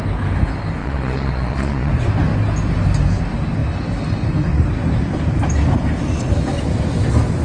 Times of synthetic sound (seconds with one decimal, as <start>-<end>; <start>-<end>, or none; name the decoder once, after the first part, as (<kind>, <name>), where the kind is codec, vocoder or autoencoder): 0.8-1.9 (vocoder, Vocos)

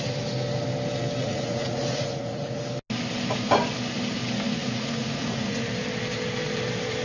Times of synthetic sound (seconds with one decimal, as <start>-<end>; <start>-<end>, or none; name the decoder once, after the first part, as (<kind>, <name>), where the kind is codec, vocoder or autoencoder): 1.2-2.6 (vocoder, Vocos); 4.6-5.7

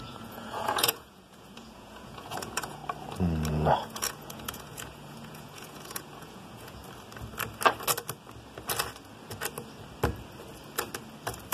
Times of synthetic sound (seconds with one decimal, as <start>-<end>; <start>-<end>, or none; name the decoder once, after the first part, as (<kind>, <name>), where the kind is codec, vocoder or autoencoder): 0.0-2.8 (vocoder, Vocos); 3.5-6.8

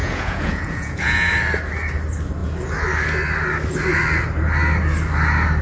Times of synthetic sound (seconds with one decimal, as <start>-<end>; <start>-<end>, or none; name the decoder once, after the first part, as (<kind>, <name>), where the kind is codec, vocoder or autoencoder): 0.0-1.3 (vocoder, Vocos)